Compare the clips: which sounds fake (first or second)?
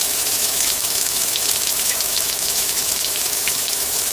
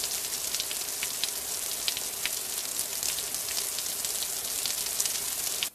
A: first